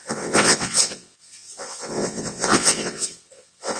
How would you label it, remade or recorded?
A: remade